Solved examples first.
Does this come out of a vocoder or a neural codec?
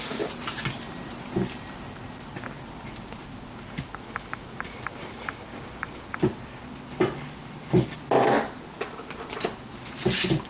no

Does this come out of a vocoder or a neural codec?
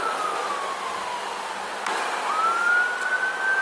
no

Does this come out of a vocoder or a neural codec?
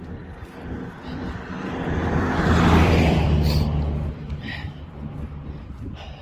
yes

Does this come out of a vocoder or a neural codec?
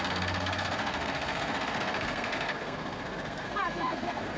yes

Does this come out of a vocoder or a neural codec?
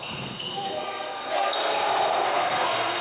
yes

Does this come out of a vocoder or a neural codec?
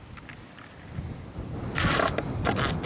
no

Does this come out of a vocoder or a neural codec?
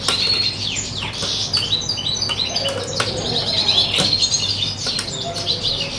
no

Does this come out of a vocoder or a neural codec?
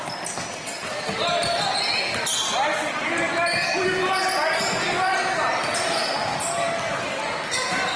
no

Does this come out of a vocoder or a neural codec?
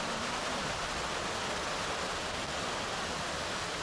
no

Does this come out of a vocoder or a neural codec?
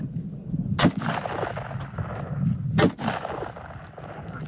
no